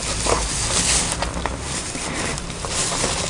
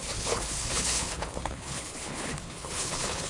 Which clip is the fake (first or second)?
second